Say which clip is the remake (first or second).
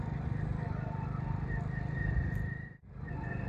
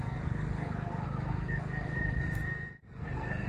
second